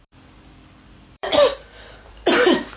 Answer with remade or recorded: remade